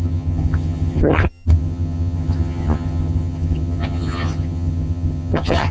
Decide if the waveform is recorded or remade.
remade